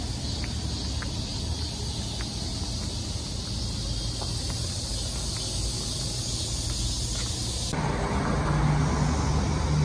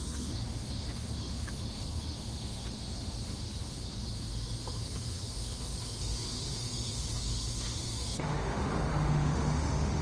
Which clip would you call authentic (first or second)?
first